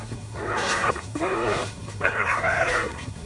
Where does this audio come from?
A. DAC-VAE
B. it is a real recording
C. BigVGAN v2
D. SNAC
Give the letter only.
D